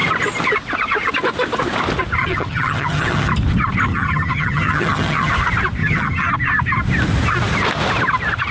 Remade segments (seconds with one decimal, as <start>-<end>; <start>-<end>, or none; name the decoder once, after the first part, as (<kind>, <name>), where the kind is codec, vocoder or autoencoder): 2.2-3.3 (vocoder, HiFi-GAN); 3.9-5.3; 5.8-6.3